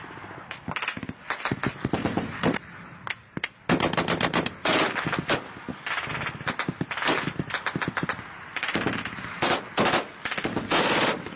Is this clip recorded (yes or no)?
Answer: yes